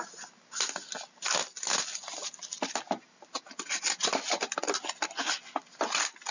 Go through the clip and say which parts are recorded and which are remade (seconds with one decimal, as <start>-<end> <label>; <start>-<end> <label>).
0.0-6.3 recorded